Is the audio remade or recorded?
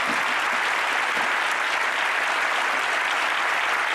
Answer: recorded